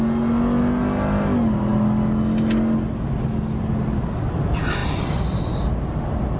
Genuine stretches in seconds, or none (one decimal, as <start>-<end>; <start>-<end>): 0.0-4.8; 5.4-6.4